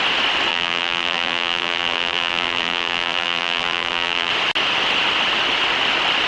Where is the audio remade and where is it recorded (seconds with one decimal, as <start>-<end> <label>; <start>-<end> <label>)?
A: 0.0-0.5 recorded; 0.5-4.3 remade; 4.3-6.3 recorded